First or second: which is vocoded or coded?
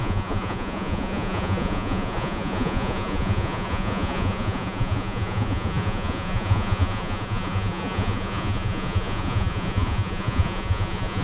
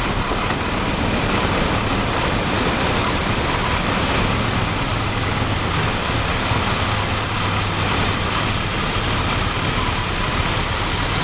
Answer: first